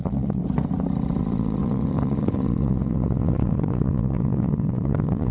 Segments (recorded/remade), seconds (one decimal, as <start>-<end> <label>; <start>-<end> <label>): 0.0-0.4 remade; 0.4-1.2 recorded; 1.2-5.3 remade